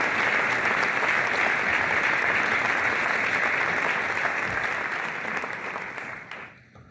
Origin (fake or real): real